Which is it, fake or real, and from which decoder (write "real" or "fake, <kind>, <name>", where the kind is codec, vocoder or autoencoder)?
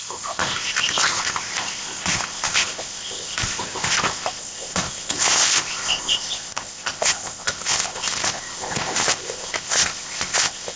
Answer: fake, codec, ZipCodec